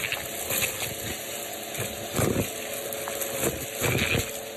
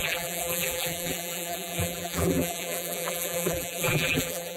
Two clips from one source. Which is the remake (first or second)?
second